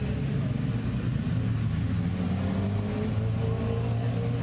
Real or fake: real